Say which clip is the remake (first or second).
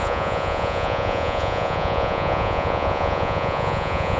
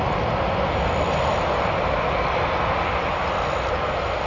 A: first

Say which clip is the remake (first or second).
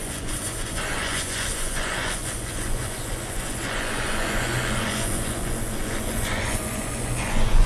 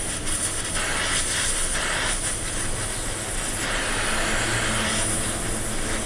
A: first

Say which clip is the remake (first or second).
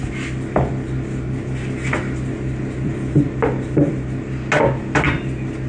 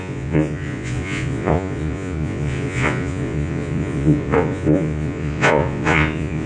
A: second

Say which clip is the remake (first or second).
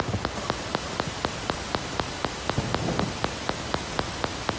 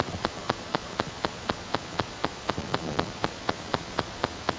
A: second